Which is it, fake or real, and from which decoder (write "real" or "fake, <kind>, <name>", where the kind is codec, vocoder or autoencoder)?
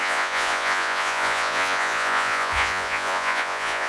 fake, vocoder, Vocos